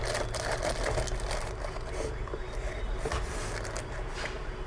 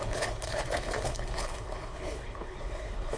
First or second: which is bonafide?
first